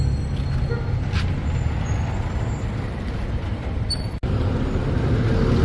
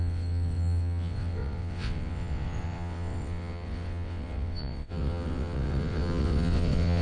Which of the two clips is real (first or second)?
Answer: first